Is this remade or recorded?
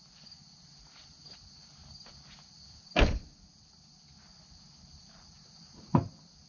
recorded